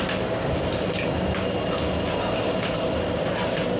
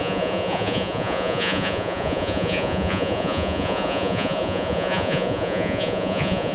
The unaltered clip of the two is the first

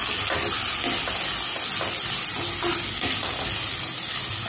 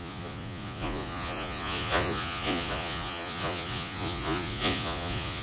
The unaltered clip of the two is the first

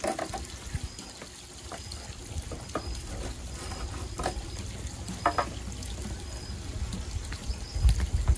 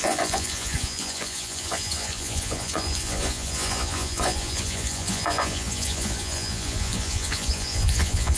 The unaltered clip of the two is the first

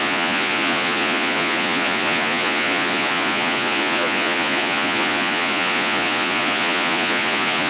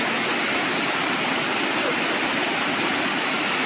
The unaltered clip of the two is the second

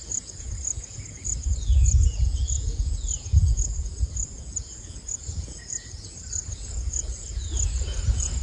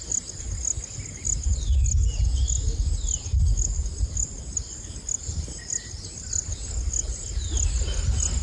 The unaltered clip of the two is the second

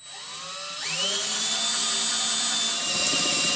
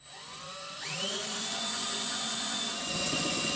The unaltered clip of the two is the first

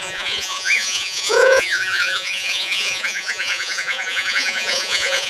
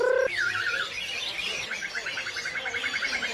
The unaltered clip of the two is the second